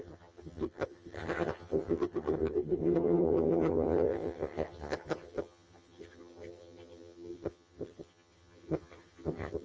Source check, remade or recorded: remade